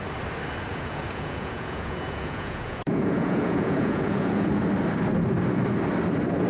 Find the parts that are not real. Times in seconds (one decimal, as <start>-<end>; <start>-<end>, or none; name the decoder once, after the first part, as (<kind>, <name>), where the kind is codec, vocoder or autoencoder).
0.7-4.6 (vocoder, Vocos)